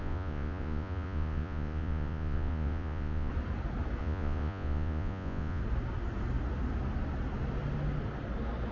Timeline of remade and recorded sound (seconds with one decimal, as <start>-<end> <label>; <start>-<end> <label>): 0.0-3.3 remade; 3.3-4.0 recorded; 4.0-5.6 remade; 5.6-8.7 recorded